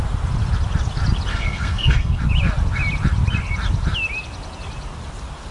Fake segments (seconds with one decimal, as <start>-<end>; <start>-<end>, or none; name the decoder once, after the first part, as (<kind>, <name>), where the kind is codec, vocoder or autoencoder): 1.3-2.2 (codec, SNAC)